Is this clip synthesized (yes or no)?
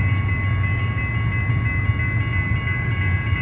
no